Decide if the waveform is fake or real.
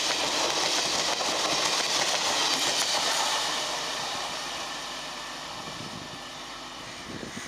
real